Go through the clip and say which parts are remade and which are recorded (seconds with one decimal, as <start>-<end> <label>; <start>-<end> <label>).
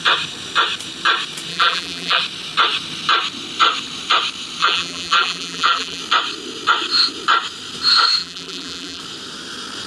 0.0-1.5 recorded; 1.5-2.2 remade; 2.2-4.6 recorded; 4.6-6.0 remade; 6.0-8.2 recorded; 8.2-9.0 remade; 9.0-9.9 recorded